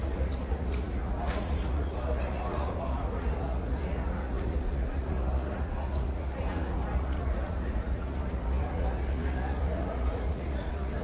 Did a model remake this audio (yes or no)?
yes